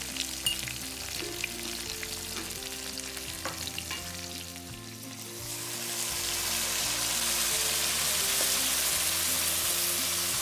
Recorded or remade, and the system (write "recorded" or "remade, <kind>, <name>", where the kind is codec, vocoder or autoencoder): recorded